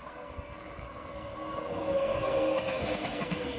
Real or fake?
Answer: fake